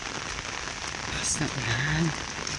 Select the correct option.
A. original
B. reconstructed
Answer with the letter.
A